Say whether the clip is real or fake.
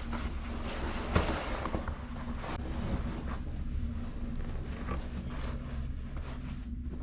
real